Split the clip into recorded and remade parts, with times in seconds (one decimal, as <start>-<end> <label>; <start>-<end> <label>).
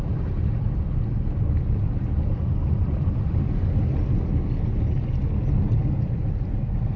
0.0-7.0 recorded